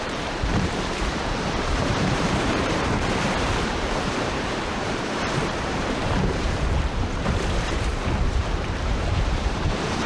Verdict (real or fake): fake